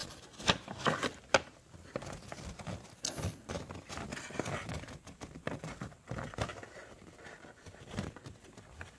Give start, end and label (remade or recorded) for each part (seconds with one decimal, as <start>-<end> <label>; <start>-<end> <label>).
0.0-9.0 recorded

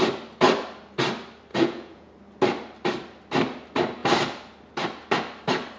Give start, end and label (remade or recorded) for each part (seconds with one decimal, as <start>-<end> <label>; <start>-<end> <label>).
0.0-1.5 recorded; 1.5-2.1 remade; 2.1-5.8 recorded

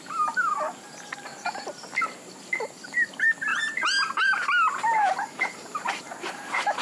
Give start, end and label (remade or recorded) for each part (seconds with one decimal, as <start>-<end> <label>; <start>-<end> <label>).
0.0-6.8 remade

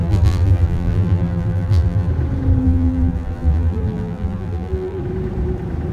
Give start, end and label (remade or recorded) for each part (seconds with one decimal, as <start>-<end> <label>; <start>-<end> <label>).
0.0-2.1 remade; 2.1-2.6 recorded; 2.6-5.0 remade; 5.0-5.9 recorded

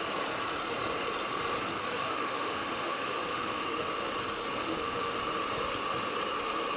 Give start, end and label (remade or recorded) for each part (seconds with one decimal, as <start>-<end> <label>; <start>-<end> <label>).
0.0-1.7 recorded; 1.7-3.9 remade; 3.9-4.6 recorded; 4.6-5.2 remade; 5.2-6.8 recorded

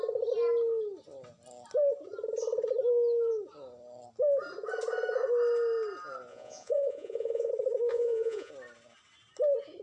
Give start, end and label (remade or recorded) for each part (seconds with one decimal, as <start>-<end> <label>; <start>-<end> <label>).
0.0-6.3 recorded; 6.3-7.5 remade; 7.5-7.9 recorded; 7.9-8.5 remade; 8.5-9.8 recorded

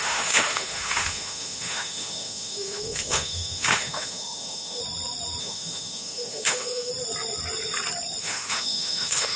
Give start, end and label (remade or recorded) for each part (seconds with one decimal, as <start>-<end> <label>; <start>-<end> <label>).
0.0-4.8 remade; 4.8-5.4 recorded; 5.4-6.9 remade; 6.9-8.2 recorded; 8.2-9.4 remade

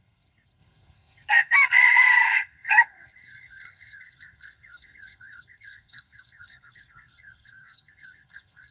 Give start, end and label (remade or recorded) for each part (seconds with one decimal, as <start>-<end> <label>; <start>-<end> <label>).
0.0-8.7 remade